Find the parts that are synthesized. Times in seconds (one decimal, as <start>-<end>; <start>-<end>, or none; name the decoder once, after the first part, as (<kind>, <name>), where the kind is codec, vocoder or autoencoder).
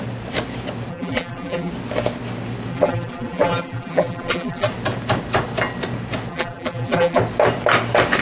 0.9-1.7 (vocoder, BigVGAN v2); 2.7-4.7; 6.3-7.2